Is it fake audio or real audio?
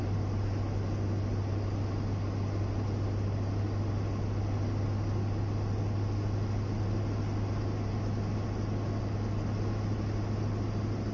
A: real